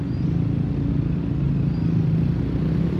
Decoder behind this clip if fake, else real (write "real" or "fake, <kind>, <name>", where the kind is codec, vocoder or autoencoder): real